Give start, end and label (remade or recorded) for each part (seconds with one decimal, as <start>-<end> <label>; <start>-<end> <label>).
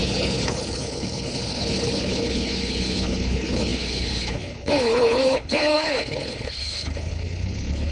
0.0-7.9 remade